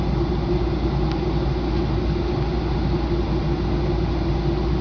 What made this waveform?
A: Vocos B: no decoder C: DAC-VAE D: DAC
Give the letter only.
B